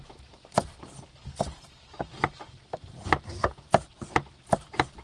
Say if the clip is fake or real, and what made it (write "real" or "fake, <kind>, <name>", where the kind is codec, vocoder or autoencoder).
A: fake, vocoder, BigVGAN v2